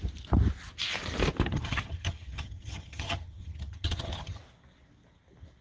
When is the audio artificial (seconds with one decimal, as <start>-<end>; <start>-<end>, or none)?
1.5-4.4